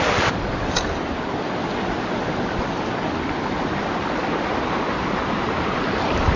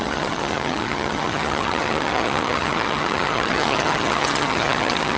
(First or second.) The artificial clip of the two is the second